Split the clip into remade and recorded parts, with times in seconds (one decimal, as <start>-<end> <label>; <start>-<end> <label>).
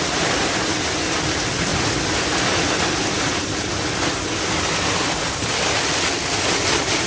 0.0-7.1 recorded